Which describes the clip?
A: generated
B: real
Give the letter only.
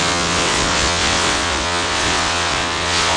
A